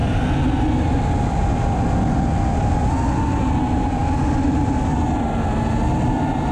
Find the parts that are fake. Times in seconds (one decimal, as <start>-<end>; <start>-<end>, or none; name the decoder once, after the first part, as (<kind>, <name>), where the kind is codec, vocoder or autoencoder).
none